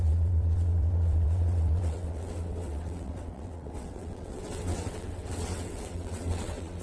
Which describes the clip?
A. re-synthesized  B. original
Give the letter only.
A